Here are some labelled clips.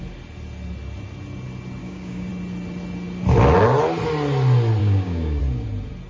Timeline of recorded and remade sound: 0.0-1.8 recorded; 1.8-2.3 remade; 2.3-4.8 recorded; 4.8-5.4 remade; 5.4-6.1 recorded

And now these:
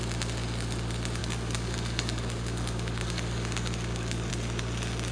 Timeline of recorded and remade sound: 0.0-1.2 recorded; 1.2-4.3 remade; 4.3-5.1 recorded

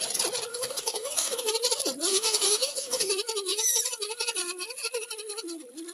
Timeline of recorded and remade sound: 0.0-0.5 recorded; 0.5-1.5 remade; 1.5-2.1 recorded; 2.1-3.1 remade; 3.1-5.9 recorded

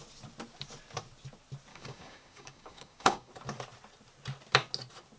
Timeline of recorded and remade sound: 0.0-1.7 recorded; 1.7-3.3 remade; 3.3-5.2 recorded

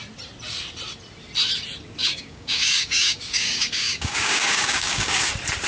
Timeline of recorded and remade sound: 0.0-2.0 recorded; 2.0-5.3 remade; 5.3-5.7 recorded